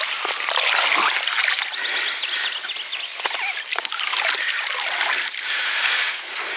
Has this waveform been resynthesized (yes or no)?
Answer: no